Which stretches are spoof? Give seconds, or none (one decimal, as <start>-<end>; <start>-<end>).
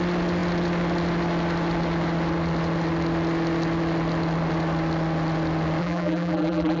5.8-6.8